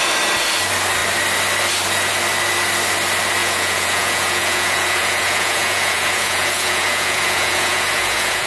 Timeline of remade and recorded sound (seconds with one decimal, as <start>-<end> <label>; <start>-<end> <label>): 0.0-3.4 recorded; 3.4-8.5 remade